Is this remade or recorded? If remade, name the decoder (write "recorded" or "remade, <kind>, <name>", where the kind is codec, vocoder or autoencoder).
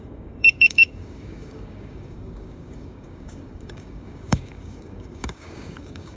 remade, codec, DAC